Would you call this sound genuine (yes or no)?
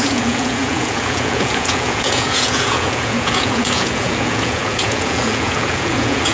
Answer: no